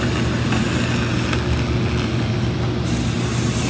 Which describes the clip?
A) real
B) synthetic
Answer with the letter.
A